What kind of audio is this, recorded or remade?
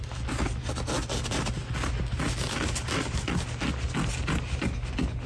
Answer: recorded